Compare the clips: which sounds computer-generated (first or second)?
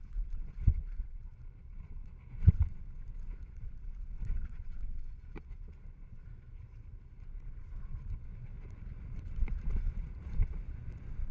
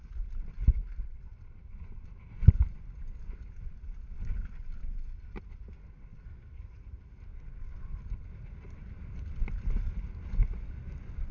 first